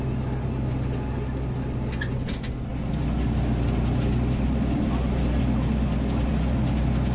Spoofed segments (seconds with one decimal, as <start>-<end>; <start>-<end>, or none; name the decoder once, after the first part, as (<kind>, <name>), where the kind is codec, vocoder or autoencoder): none